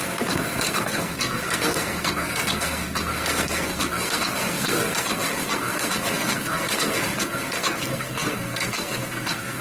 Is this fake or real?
fake